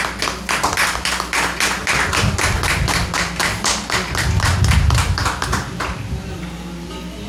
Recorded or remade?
remade